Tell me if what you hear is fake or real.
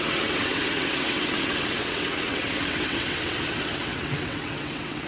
fake